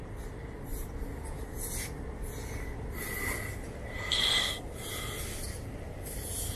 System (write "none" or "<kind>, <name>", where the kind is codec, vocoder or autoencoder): none